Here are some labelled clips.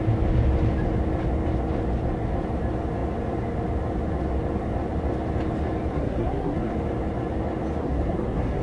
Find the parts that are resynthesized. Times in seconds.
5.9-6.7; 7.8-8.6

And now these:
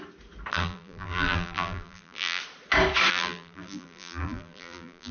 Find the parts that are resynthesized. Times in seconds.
0.5-2.4; 3.1-5.1